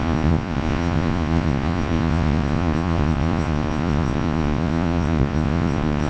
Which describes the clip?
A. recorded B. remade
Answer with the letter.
B